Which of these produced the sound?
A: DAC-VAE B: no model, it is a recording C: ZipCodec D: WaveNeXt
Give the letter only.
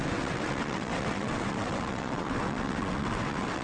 D